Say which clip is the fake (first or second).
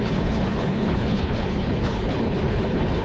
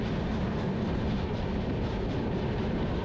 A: first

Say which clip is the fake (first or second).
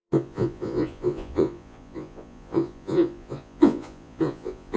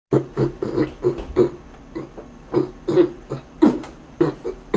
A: first